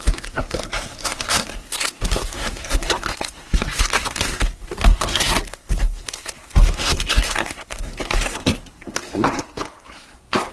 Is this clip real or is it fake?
fake